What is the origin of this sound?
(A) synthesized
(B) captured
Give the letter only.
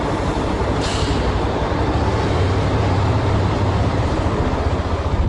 A